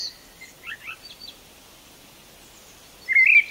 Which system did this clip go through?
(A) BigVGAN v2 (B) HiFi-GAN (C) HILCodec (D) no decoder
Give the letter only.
D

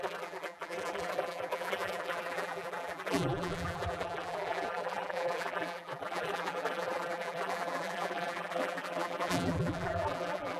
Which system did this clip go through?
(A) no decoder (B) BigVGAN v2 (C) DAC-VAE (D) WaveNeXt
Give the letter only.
B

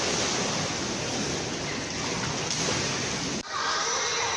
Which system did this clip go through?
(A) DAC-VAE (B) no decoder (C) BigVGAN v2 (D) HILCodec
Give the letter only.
B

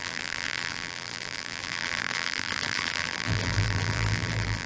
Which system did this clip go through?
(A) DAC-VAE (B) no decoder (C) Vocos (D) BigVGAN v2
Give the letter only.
D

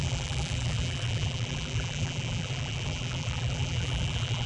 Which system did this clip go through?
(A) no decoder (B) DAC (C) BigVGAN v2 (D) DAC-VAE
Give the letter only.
C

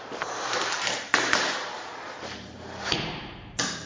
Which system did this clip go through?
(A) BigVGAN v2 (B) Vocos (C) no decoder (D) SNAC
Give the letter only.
A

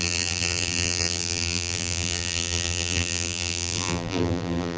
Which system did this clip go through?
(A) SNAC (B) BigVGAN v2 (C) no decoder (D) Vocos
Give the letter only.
B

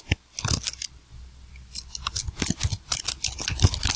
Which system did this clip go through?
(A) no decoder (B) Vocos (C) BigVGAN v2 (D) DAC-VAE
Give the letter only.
A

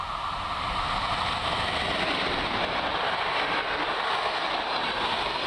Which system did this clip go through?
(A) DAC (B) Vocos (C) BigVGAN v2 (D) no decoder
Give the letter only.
D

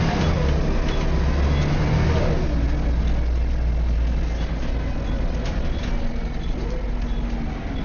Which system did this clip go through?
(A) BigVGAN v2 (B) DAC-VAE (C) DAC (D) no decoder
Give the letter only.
D